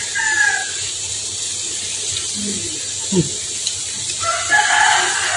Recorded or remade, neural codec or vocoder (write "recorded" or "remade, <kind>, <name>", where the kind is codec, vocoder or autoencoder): recorded